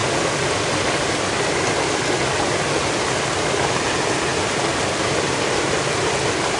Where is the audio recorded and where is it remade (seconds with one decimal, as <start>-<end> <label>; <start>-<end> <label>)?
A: 0.0-6.6 recorded